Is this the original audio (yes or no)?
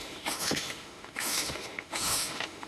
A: no